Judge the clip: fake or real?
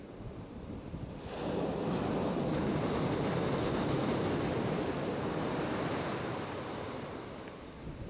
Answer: fake